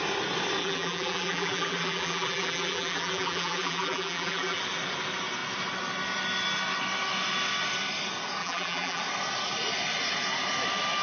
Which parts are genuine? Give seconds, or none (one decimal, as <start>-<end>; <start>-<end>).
0.0-0.6; 4.6-8.4; 9.0-11.0